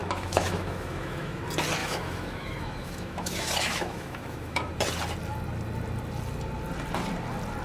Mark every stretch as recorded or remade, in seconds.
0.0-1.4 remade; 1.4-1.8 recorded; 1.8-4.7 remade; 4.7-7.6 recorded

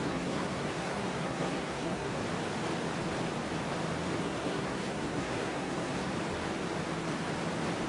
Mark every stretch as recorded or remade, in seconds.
0.0-2.2 remade; 2.2-4.2 recorded; 4.2-6.1 remade; 6.1-7.9 recorded

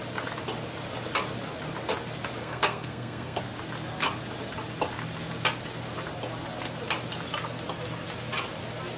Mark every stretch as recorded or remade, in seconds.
0.0-2.4 recorded; 2.4-3.4 remade; 3.4-9.0 recorded

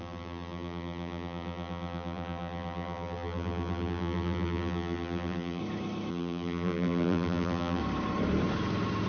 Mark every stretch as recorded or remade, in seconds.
0.0-5.6 remade; 5.6-6.1 recorded; 6.1-7.8 remade; 7.8-9.1 recorded

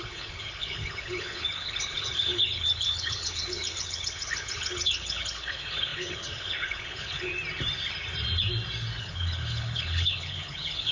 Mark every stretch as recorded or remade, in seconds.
0.0-7.3 remade; 7.3-9.0 recorded; 9.0-10.9 remade

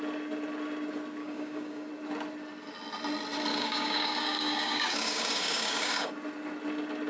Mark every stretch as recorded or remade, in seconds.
0.0-1.2 recorded; 1.2-1.9 remade; 1.9-3.5 recorded; 3.5-6.1 remade; 6.1-7.1 recorded

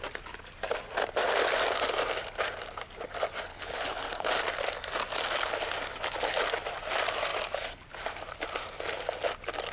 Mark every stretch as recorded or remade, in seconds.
0.0-3.5 recorded; 3.5-4.3 remade; 4.3-9.7 recorded